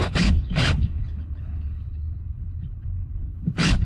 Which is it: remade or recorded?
remade